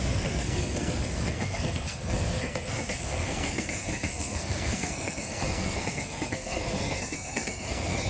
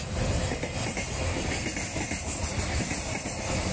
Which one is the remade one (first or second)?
first